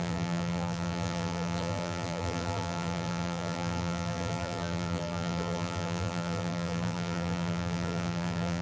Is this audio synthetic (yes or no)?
yes